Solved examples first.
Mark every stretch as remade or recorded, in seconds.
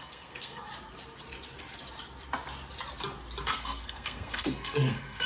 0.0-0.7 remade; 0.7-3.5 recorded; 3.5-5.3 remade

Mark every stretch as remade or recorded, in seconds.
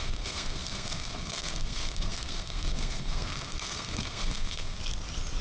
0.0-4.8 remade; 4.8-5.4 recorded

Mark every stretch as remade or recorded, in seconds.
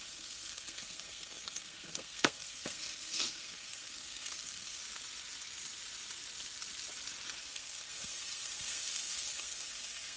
0.0-4.8 remade; 4.8-7.4 recorded; 7.4-10.2 remade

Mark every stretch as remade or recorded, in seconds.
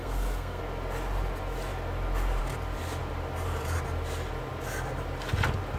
0.0-0.6 remade; 0.6-5.8 recorded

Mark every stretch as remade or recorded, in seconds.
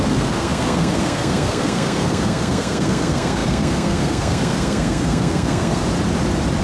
0.0-5.8 remade; 5.8-6.6 recorded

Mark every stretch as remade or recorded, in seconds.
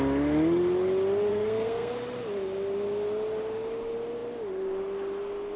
0.0-1.3 recorded; 1.3-1.9 remade; 1.9-5.6 recorded